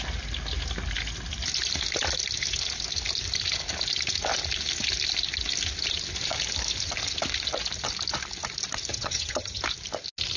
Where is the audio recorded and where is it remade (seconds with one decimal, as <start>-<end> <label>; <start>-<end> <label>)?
0.0-8.9 recorded; 8.9-9.6 remade; 9.6-10.4 recorded